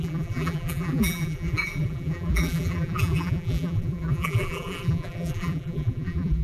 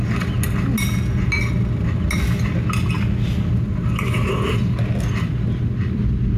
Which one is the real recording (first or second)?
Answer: second